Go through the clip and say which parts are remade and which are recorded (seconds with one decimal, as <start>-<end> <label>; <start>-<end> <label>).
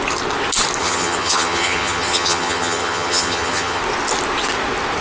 0.0-0.8 recorded; 0.8-3.8 remade; 3.8-5.0 recorded